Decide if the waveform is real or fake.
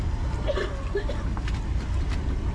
fake